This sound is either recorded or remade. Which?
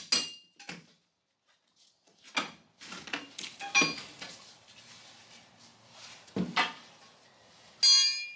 recorded